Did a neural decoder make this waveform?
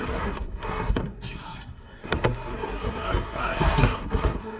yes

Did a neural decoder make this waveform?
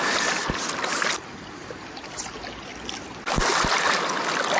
no